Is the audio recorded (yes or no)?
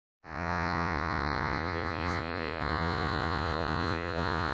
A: no